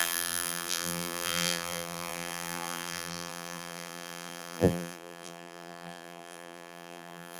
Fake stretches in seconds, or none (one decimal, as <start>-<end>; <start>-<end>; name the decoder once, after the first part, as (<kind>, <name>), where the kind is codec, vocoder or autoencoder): 0.0-7.4 (vocoder, BigVGAN v2)